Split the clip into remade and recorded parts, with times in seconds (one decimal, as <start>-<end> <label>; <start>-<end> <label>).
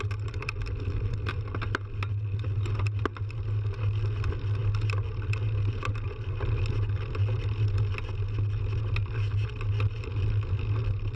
0.0-11.2 recorded